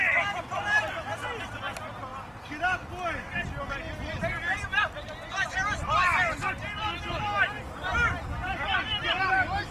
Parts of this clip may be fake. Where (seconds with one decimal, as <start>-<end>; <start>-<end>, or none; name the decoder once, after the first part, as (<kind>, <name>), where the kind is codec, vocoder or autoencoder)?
none